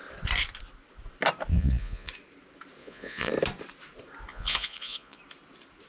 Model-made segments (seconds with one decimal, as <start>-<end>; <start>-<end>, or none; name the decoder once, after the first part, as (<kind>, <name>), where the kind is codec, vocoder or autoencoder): 1.5-2.1 (vocoder, Vocos); 2.8-3.3; 4.3-5.2